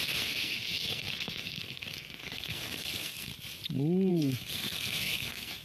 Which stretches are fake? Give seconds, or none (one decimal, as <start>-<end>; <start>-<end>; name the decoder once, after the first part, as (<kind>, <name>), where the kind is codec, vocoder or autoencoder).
0.0-3.3 (codec, SNAC); 4.1-5.6